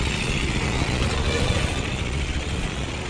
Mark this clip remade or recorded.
remade